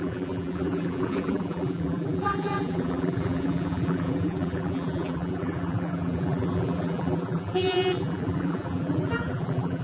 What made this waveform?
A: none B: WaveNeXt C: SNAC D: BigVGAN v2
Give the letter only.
D